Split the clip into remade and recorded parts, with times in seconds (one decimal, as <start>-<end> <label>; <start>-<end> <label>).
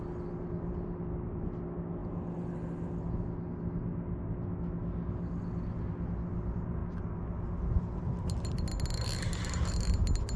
0.0-10.4 recorded